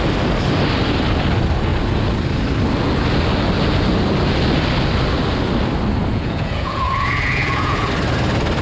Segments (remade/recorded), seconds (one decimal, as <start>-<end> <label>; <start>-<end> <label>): 0.0-6.1 recorded; 6.1-7.9 remade; 7.9-8.6 recorded